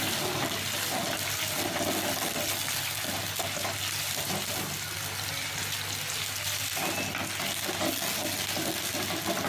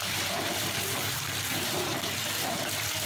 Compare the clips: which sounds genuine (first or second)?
first